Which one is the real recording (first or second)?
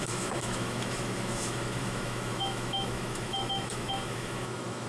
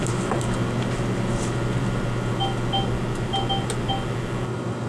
second